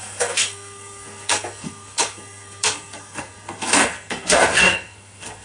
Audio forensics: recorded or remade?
remade